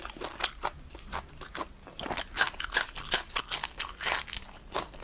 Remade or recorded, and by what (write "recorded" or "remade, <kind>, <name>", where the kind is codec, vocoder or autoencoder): recorded